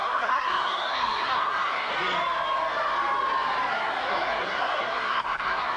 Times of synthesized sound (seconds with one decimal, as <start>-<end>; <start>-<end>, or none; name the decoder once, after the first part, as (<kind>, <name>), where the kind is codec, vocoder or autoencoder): 0.0-1.9 (codec, SNAC); 3.7-5.8

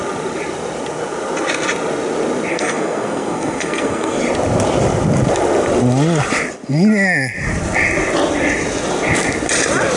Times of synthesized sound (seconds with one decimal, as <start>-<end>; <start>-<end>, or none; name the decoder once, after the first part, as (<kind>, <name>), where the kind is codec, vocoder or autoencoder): 2.5-4.2 (codec, SNAC)

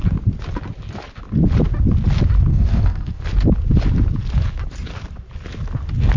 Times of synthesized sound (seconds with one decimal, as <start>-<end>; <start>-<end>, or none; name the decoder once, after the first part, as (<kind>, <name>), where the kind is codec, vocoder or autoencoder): 2.5-3.2 (codec, SNAC)

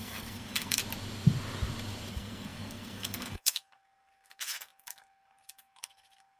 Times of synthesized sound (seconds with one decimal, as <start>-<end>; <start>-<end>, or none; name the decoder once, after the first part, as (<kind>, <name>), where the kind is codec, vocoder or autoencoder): 0.0-0.8 (codec, SNAC); 2.1-6.4

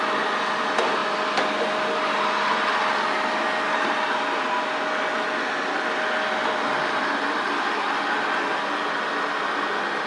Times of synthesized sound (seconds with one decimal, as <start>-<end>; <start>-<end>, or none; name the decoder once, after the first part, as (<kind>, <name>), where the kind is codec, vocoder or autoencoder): none

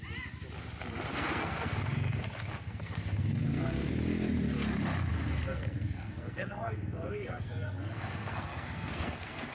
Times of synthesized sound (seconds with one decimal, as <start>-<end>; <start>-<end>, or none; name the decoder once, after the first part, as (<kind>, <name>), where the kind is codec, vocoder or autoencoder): 1.1-3.9 (codec, SNAC); 5.1-9.5

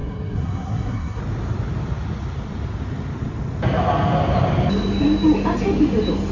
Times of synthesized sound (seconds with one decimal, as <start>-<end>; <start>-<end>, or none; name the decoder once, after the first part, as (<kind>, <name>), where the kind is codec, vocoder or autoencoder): 0.0-1.2 (codec, SNAC)